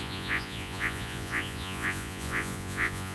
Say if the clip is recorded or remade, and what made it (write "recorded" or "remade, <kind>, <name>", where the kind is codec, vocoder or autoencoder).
remade, vocoder, Vocos